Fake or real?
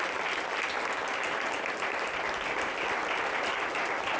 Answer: real